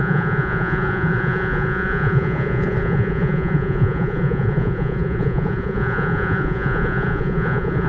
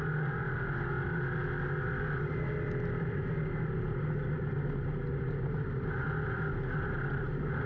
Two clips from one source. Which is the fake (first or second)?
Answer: first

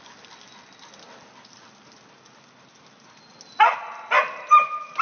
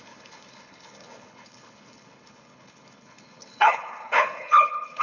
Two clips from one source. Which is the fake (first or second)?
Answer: second